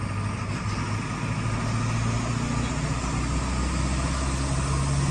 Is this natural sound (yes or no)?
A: yes